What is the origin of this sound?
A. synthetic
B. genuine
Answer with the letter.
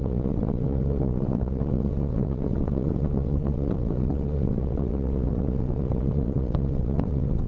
A